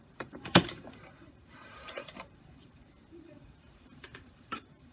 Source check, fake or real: fake